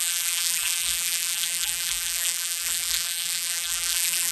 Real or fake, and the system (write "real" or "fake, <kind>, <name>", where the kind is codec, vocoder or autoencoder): fake, vocoder, BigVGAN v2